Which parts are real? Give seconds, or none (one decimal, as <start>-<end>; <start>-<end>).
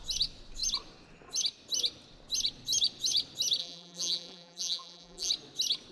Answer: 0.0-3.6; 5.3-5.9